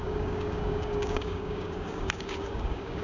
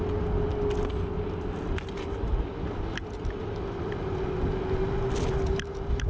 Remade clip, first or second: first